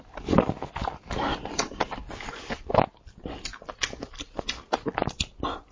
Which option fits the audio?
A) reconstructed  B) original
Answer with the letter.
B